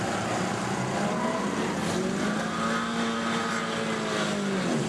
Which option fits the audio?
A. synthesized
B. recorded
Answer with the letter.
B